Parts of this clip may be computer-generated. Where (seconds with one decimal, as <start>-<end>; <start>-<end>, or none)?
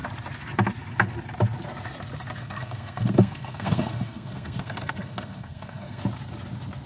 2.4-6.0